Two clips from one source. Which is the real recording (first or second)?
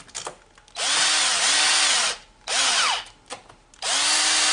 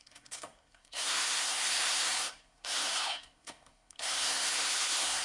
first